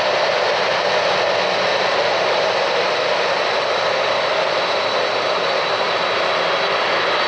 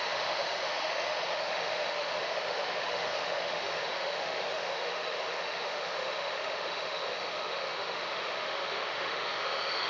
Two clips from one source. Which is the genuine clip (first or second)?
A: first